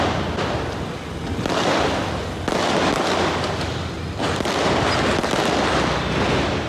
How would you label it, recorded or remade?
recorded